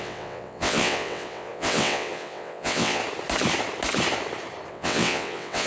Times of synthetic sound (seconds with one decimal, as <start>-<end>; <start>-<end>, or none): 0.0-3.0; 4.7-5.7